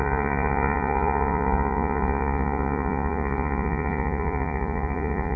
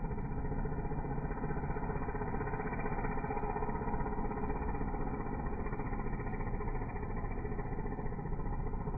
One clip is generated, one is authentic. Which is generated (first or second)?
first